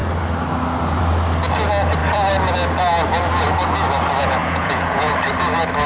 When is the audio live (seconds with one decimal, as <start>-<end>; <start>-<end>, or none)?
0.0-4.4; 5.1-5.9